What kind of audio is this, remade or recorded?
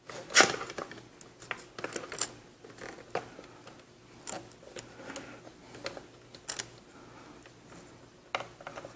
recorded